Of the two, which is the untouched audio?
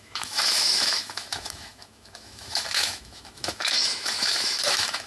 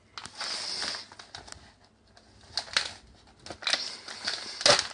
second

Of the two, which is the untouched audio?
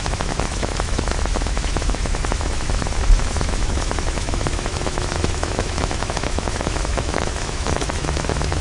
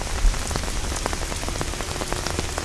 second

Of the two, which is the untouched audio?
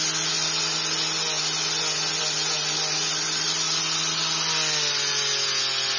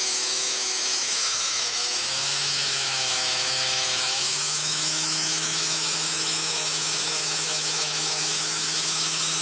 first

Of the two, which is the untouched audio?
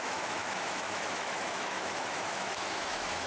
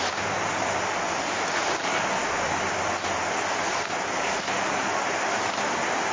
second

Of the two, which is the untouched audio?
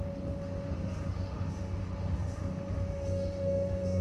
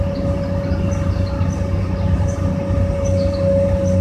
second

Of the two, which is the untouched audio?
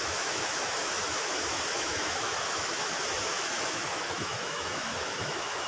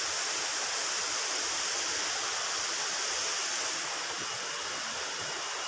second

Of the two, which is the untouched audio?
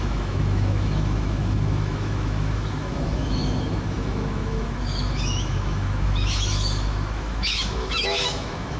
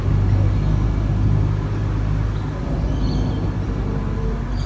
second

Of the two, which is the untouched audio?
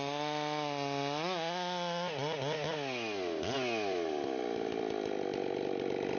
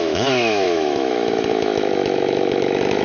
first